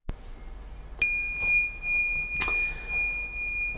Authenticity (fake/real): real